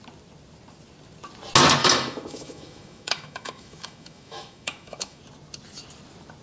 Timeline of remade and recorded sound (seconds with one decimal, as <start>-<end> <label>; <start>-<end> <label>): 0.0-1.8 recorded; 1.8-5.2 remade; 5.2-6.4 recorded